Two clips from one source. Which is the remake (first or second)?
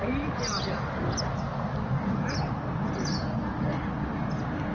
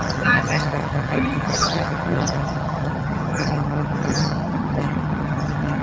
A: second